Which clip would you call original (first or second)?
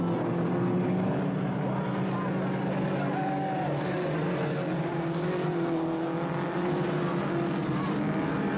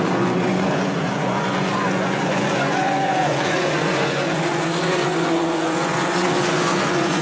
first